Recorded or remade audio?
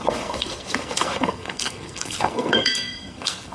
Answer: remade